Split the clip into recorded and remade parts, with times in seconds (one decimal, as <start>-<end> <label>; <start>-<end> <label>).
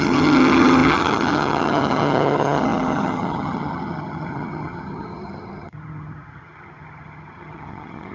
0.0-8.1 remade